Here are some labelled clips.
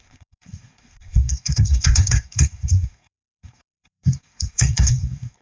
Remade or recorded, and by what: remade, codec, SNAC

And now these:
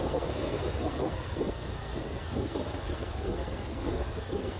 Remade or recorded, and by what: remade, codec, SNAC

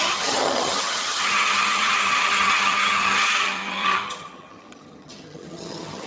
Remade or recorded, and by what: remade, vocoder, HiFi-GAN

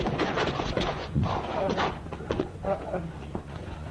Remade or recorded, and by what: remade, vocoder, Vocos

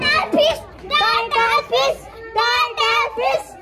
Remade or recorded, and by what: recorded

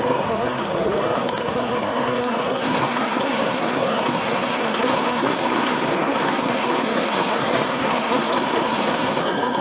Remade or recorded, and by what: remade, codec, SNAC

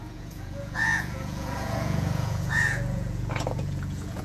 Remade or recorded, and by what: remade, vocoder, Vocos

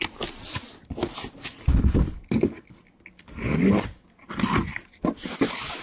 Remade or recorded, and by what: recorded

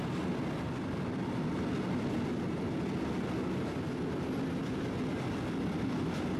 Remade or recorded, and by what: recorded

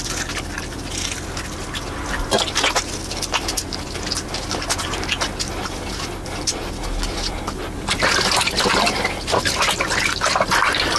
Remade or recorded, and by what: recorded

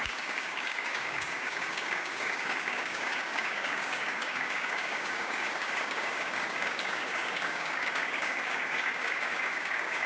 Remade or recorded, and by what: remade, codec, DAC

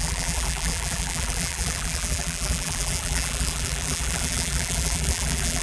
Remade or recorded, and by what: remade, vocoder, BigVGAN v2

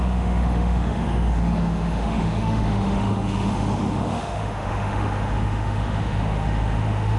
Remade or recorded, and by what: remade, autoencoder, DAC-VAE